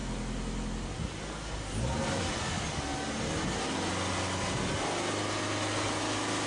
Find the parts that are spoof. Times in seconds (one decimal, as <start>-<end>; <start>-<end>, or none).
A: none